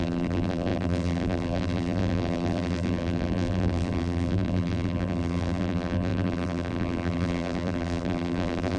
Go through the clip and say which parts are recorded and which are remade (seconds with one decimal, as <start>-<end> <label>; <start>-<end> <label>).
0.0-8.8 remade